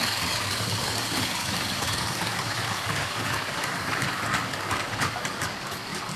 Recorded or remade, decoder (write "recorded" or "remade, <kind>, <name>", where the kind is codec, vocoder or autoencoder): remade, codec, DAC